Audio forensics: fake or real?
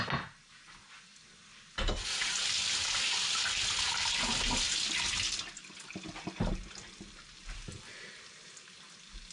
real